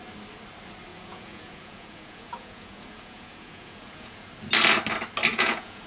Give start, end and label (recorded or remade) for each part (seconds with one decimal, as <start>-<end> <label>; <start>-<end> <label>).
0.0-0.9 recorded; 0.9-4.3 remade; 4.3-5.3 recorded; 5.3-5.9 remade